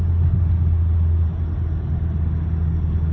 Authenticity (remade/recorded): recorded